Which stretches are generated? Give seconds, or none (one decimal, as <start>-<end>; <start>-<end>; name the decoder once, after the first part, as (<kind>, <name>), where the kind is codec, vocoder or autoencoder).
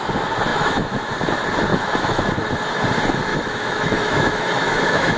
0.5-1.1 (autoencoder, DAC-VAE); 1.7-2.3; 3.3-5.2